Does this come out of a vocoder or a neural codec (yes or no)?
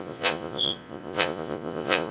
yes